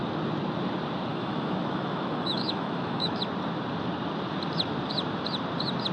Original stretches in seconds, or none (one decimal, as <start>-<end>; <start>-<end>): 0.0-1.1; 3.2-5.9